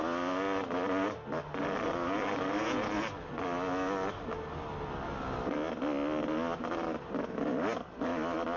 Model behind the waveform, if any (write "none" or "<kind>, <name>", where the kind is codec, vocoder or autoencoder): none